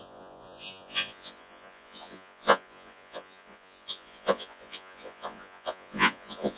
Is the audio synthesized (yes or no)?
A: yes